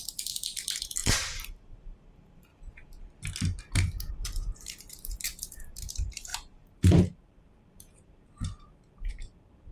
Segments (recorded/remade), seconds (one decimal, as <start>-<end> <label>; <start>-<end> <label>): 0.0-2.5 remade; 2.5-4.1 recorded; 4.1-9.7 remade